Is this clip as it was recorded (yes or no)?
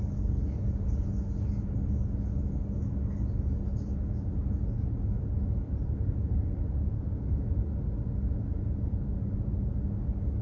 yes